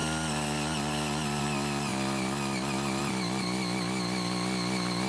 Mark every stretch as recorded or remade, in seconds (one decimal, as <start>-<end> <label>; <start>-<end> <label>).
0.0-5.1 recorded